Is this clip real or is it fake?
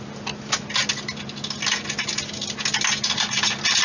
real